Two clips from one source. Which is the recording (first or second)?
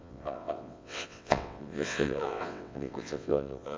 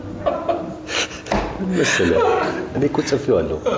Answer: second